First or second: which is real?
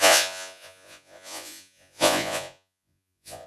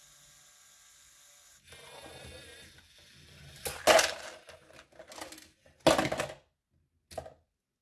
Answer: second